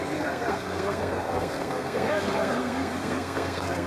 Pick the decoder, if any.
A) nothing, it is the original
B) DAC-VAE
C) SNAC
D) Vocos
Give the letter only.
C